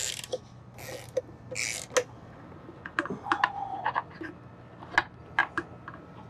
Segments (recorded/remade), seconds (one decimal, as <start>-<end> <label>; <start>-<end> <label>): 0.0-6.3 recorded